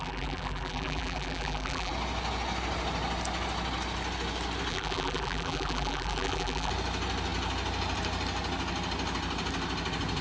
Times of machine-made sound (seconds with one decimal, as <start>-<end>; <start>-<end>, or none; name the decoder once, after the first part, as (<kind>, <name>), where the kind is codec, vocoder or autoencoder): 0.0-1.9 (vocoder, BigVGAN v2); 4.7-6.7